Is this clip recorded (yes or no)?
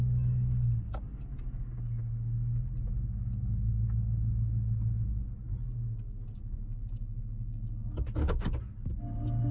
yes